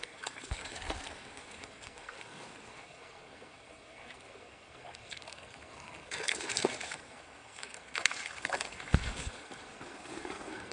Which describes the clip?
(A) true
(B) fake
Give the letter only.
B